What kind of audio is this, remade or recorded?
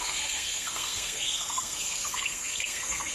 remade